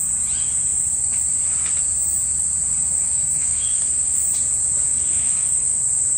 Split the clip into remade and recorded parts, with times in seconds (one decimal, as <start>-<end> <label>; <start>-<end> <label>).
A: 0.0-3.0 recorded; 3.0-4.2 remade; 4.2-4.9 recorded; 4.9-5.8 remade; 5.8-6.2 recorded